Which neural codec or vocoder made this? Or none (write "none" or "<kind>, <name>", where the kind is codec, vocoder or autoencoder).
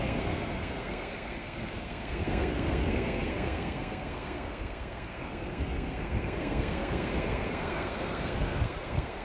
codec, SNAC